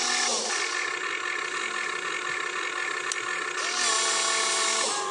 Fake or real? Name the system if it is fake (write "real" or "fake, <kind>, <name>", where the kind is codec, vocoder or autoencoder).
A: real